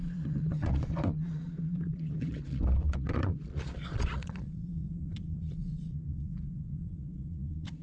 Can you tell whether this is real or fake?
fake